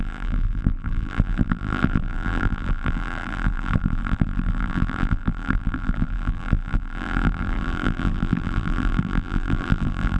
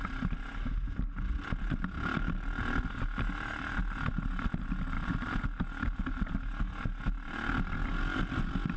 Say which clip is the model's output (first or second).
first